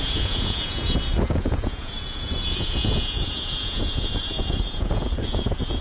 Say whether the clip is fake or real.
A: fake